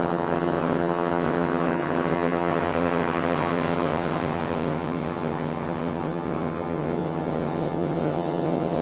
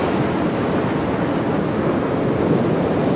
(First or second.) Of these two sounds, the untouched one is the second